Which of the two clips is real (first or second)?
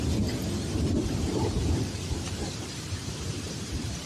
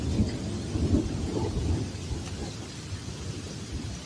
second